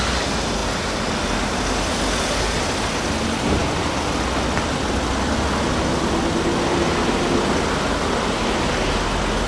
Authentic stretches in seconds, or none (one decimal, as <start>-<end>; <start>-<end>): 0.0-9.5